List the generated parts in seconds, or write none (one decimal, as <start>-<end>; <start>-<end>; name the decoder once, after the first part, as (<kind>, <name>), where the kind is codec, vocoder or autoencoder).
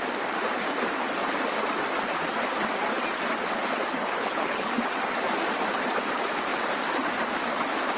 4.0-4.7 (codec, HILCodec)